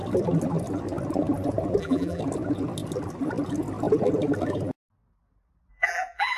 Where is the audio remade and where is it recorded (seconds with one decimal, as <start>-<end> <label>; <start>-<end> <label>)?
0.0-1.8 recorded; 1.8-2.2 remade; 2.2-5.7 recorded; 5.7-6.4 remade